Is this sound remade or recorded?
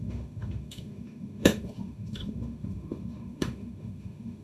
remade